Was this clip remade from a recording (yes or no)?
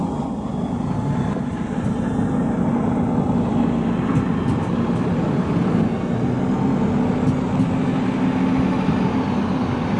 no